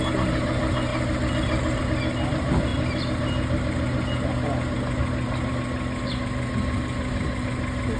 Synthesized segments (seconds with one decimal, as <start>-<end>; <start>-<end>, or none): none